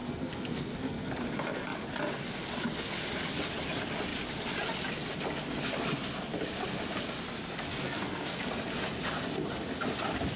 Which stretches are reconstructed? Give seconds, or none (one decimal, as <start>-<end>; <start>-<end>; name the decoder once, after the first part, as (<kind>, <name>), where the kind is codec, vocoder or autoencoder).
0.0-1.1 (codec, SNAC); 7.8-8.4

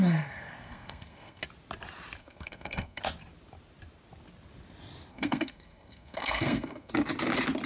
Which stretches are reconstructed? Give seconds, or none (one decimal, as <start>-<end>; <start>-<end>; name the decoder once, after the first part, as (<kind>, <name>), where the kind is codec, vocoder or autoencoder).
0.0-1.4 (codec, SNAC); 2.2-3.0; 5.1-6.9

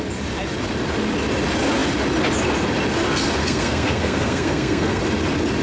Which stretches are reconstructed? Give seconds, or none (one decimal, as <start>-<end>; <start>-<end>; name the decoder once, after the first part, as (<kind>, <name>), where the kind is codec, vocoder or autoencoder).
3.4-5.0 (codec, SNAC)

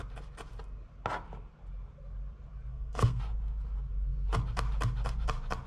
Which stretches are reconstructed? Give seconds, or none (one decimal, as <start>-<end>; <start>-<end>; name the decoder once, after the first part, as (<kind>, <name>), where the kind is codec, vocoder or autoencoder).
2.7-3.2 (codec, SNAC)